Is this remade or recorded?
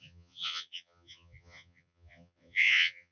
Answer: remade